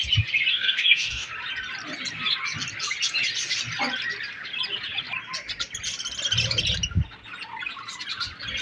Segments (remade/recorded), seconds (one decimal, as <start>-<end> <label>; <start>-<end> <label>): 0.0-0.5 recorded; 0.5-1.3 remade; 1.3-8.6 recorded